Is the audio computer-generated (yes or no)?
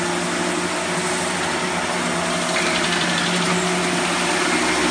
no